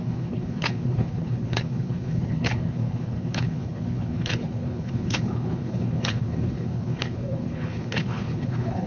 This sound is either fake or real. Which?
fake